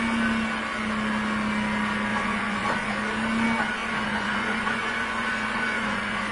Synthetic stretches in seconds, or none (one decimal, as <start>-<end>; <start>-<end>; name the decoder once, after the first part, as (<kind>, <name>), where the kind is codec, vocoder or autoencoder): 2.1-2.9 (vocoder, Vocos); 3.8-6.3